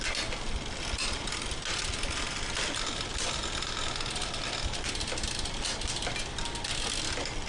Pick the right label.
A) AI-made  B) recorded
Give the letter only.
B